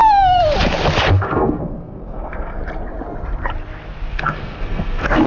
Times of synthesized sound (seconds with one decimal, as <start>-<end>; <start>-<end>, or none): 1.1-2.6; 4.1-5.3